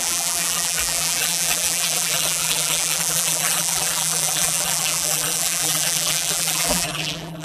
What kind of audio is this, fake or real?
fake